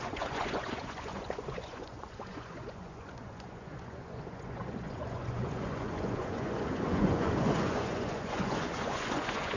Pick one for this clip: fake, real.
fake